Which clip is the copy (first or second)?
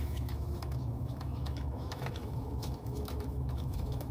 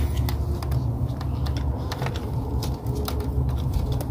first